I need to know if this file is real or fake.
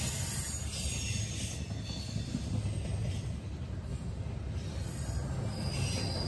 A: real